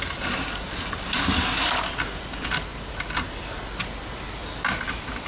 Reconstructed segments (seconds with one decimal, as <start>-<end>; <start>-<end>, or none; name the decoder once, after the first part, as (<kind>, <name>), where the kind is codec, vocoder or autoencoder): 4.4-5.3 (vocoder, BigVGAN v2)